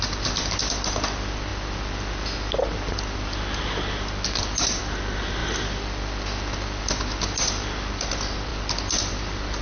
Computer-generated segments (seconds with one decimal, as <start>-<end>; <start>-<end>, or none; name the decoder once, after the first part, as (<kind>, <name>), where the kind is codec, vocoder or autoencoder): none